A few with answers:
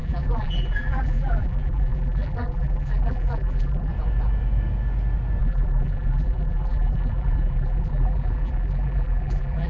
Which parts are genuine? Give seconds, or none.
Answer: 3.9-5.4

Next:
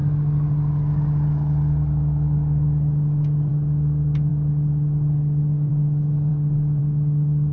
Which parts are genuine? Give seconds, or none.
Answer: 0.0-7.5

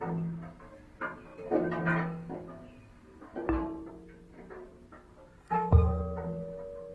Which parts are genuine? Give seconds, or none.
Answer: 0.0-5.4; 6.0-6.9

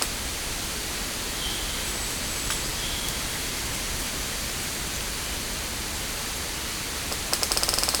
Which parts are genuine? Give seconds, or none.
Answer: 0.0-8.0

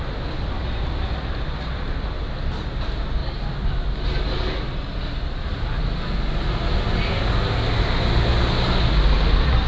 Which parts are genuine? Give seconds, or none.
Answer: 0.0-9.7

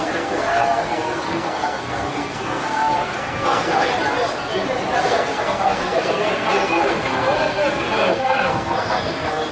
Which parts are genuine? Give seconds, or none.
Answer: 3.9-5.0